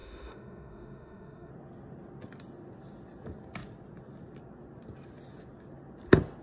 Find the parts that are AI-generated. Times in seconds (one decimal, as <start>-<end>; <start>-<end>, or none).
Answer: 0.0-1.5